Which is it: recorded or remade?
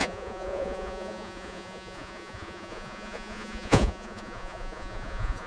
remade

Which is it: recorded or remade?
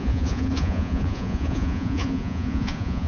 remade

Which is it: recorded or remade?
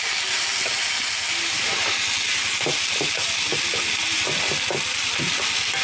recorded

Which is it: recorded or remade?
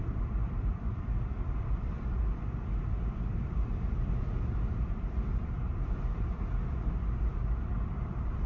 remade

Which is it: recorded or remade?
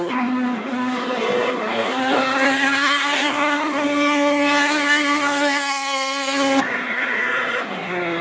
remade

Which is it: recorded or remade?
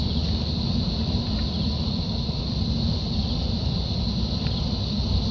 recorded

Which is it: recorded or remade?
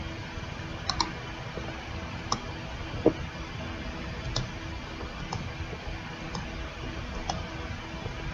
recorded